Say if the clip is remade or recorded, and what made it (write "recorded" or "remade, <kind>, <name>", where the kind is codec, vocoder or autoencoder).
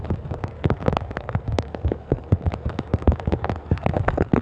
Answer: remade, codec, SNAC